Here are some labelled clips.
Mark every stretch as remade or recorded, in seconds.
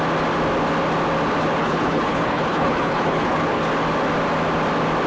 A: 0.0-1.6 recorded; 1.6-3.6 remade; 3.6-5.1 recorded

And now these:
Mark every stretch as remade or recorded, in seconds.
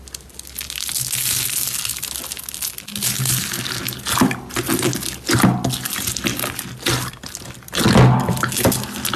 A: 0.0-9.2 recorded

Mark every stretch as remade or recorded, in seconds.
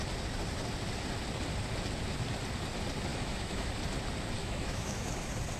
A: 0.0-3.1 recorded; 3.1-3.7 remade; 3.7-4.4 recorded; 4.4-5.1 remade; 5.1-5.6 recorded